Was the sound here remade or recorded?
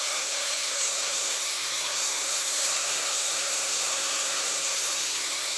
remade